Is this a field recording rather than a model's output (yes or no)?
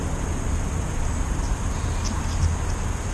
yes